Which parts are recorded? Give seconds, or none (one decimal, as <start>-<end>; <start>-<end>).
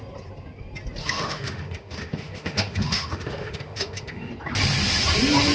0.0-1.0; 4.3-5.5